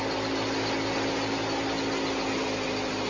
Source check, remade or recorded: recorded